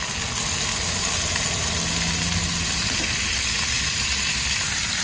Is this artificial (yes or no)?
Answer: no